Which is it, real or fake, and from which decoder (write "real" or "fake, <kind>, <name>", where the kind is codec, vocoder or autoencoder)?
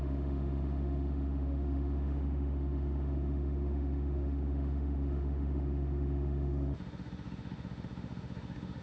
fake, autoencoder, DAC-VAE